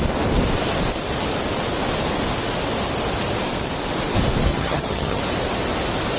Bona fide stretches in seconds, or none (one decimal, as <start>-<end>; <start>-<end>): 0.0-4.5; 5.2-6.2